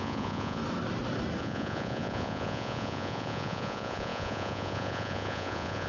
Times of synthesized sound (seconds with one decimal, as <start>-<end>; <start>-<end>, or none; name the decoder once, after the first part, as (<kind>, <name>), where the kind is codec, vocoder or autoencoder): 0.0-0.6 (vocoder, Vocos); 1.4-5.9